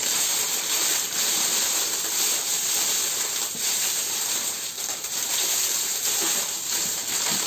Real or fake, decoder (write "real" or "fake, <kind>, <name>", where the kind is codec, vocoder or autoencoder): fake, vocoder, BigVGAN v2